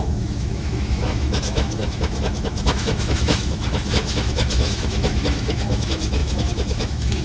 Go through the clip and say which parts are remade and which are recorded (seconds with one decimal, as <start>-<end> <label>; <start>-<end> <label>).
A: 0.0-7.2 remade